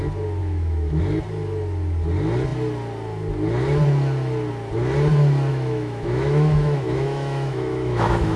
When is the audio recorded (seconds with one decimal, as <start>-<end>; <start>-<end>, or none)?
0.0-0.4; 1.0-5.5